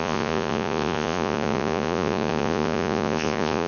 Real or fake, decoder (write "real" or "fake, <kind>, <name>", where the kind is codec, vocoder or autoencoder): fake, vocoder, Vocos